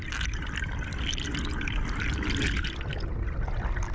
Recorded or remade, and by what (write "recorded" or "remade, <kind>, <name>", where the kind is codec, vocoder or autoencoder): recorded